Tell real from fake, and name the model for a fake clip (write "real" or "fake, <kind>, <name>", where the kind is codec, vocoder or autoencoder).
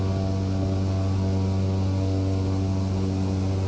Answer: real